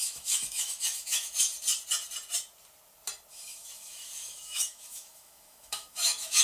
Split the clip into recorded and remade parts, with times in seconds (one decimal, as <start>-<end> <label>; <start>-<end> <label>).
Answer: 0.0-1.5 remade; 1.5-3.3 recorded; 3.3-6.4 remade